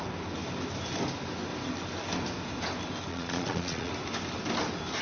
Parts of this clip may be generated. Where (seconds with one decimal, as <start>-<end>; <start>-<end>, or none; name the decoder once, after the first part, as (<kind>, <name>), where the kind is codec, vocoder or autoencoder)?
3.1-3.9 (vocoder, Vocos)